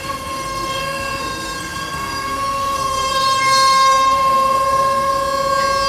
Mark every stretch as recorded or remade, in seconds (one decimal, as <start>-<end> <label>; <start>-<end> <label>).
0.0-5.1 remade; 5.1-5.9 recorded